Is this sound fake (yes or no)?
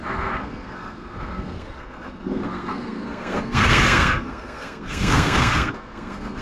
yes